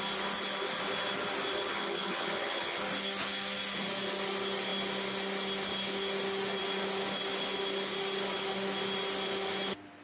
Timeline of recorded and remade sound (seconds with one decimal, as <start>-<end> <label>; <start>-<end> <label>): 0.0-1.7 recorded; 1.7-2.8 remade; 2.8-10.0 recorded